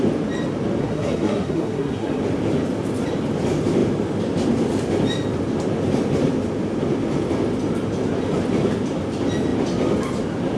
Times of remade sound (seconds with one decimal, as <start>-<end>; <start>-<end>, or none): 0.8-2.2